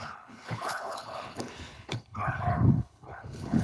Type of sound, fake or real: fake